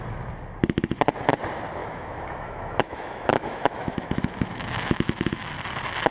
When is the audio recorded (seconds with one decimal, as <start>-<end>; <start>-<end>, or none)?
0.0-1.8; 5.5-6.1

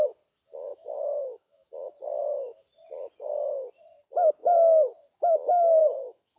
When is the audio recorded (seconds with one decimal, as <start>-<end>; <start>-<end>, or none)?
0.0-0.7; 1.7-5.8

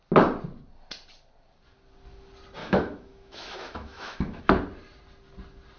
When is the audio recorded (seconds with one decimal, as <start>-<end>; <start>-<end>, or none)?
0.0-2.6; 4.4-5.8

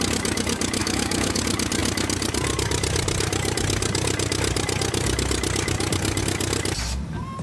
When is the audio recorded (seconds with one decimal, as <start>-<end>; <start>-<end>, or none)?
0.0-0.8; 1.4-7.4